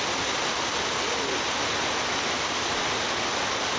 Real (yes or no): yes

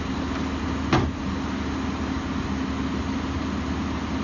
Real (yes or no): yes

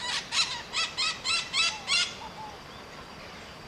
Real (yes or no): yes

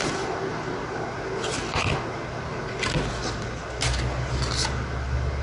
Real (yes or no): yes